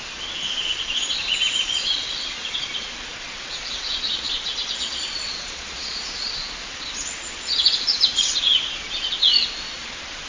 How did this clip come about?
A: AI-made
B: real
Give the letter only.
A